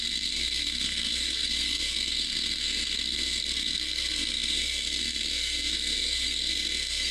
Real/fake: fake